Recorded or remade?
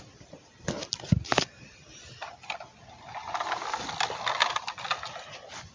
recorded